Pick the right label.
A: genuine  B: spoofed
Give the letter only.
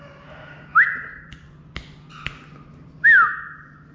A